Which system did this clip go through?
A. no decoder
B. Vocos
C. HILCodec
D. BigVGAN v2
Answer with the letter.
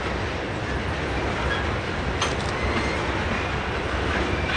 A